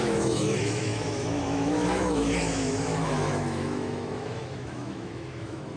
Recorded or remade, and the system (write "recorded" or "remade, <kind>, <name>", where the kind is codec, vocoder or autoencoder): remade, autoencoder, DAC-VAE